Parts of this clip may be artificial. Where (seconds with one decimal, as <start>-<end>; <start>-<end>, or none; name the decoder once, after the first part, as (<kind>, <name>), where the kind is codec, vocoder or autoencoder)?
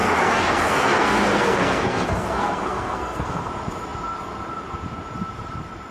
0.0-3.5 (codec, SNAC)